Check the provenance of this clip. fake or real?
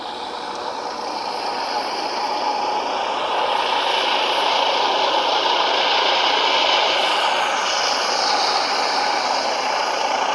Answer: real